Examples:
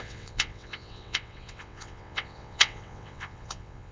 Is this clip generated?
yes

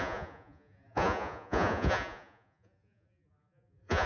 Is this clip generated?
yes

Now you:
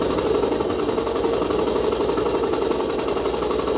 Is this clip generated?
no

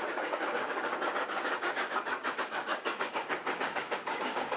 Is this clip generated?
yes